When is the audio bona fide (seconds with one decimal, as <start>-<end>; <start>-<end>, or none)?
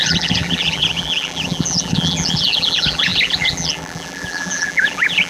none